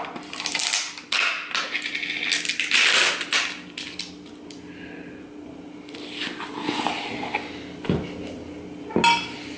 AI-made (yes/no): no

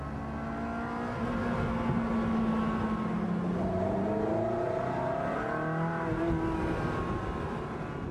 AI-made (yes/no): no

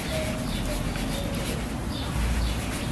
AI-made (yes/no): no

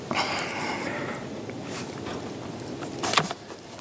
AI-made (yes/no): yes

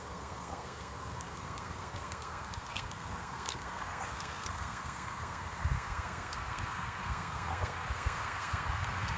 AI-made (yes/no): yes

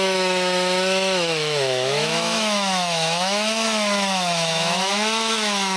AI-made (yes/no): yes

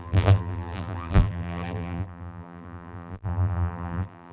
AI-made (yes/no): yes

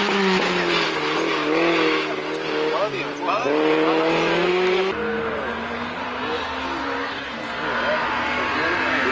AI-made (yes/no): no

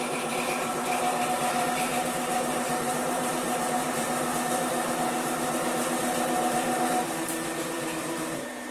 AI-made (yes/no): yes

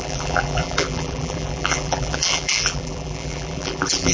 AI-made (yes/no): yes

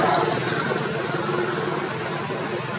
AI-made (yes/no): no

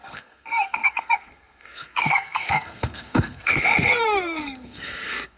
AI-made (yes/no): yes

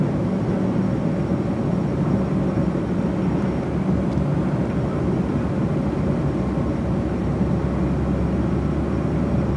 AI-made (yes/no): no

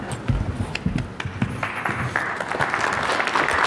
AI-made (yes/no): no